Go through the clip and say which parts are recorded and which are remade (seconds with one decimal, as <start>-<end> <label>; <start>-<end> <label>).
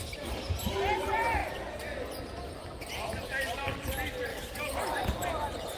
0.0-4.3 recorded; 4.3-4.8 remade; 4.8-5.8 recorded